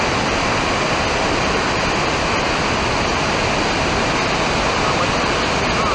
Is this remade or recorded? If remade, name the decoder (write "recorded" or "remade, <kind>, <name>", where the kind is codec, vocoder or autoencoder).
recorded